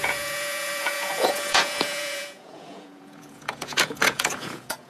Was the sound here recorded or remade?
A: remade